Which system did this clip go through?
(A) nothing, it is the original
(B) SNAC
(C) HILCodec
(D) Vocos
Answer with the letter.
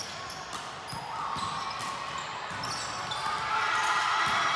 A